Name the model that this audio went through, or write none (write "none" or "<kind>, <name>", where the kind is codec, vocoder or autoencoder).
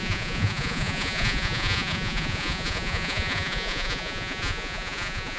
vocoder, Vocos